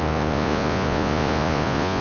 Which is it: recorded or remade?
remade